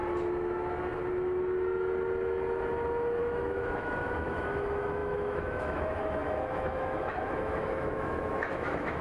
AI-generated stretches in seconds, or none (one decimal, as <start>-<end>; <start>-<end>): 3.2-9.0